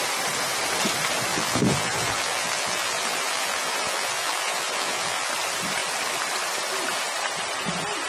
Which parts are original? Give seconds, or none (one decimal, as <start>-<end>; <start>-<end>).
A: 0.0-1.3; 5.3-8.1